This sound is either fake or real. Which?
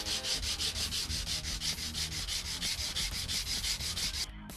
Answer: real